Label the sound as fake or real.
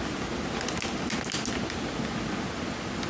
real